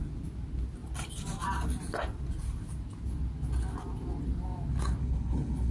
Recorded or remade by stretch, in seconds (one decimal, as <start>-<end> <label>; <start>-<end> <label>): 0.0-5.0 recorded; 5.0-5.7 remade